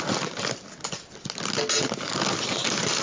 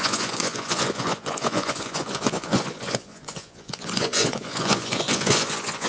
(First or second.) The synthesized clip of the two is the second